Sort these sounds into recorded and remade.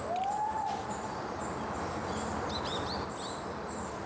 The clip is recorded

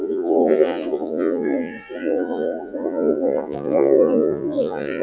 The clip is remade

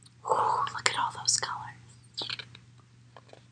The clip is recorded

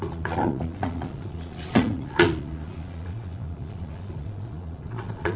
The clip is remade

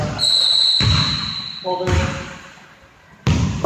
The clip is recorded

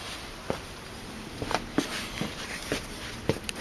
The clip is recorded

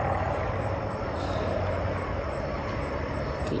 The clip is remade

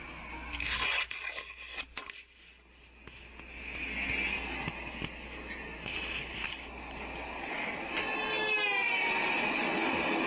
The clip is recorded